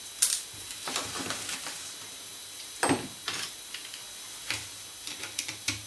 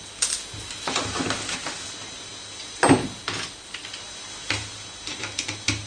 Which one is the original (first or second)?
second